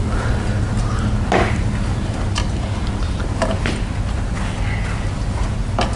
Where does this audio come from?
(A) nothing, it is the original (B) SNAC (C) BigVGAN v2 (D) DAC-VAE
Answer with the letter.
A